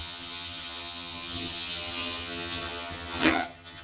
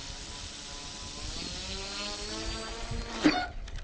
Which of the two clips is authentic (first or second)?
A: second